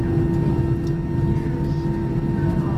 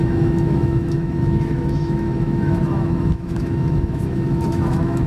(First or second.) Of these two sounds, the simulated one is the second